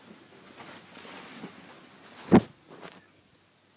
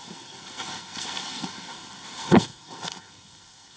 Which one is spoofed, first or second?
second